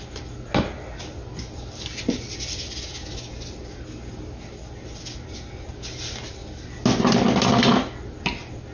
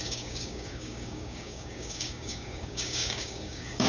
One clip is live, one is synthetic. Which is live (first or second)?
first